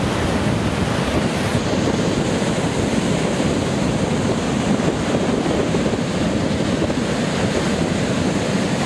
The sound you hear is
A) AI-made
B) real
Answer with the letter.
B